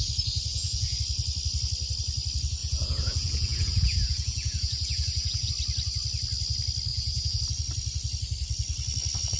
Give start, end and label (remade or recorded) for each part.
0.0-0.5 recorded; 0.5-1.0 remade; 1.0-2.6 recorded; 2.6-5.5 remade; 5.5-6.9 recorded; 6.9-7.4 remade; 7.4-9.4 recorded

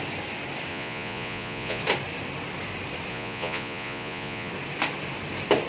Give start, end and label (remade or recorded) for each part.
0.0-0.7 recorded; 0.7-1.8 remade; 1.8-3.1 recorded; 3.1-4.5 remade; 4.5-5.7 recorded